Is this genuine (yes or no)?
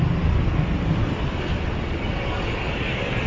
yes